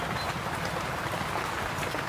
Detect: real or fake real